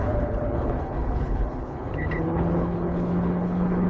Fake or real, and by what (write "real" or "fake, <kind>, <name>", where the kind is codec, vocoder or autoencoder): fake, codec, HILCodec